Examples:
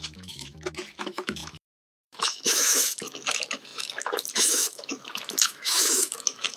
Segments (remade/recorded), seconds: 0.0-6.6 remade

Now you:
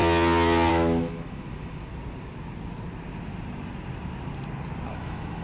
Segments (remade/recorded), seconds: 0.0-0.7 recorded; 0.7-1.9 remade; 1.9-4.9 recorded; 4.9-5.4 remade

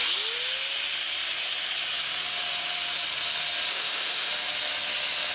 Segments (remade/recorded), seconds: 0.0-3.7 recorded; 3.7-4.3 remade; 4.3-5.3 recorded

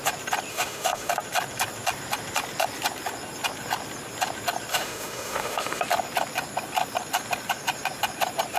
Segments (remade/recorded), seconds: 0.0-0.5 recorded; 0.5-1.1 remade; 1.1-4.7 recorded; 4.7-5.8 remade; 5.8-8.6 recorded